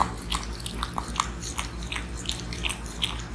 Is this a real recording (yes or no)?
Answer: yes